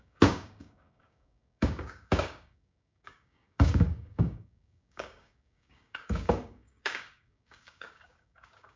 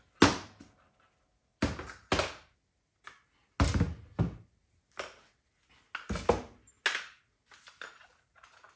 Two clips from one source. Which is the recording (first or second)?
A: second